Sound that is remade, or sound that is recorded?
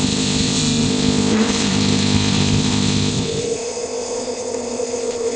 remade